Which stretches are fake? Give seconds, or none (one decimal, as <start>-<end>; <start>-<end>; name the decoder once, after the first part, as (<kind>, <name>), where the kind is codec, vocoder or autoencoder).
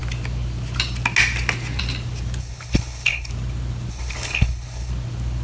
2.4-3.3 (codec, HILCodec); 3.9-4.9